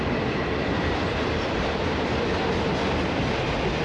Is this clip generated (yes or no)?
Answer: yes